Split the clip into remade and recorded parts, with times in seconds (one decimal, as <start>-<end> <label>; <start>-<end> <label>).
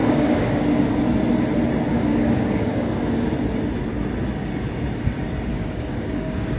0.0-1.0 remade; 1.0-1.9 recorded; 1.9-3.3 remade; 3.3-5.5 recorded; 5.5-6.6 remade